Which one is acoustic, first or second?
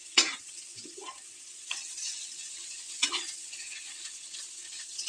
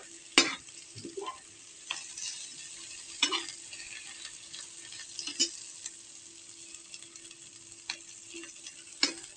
second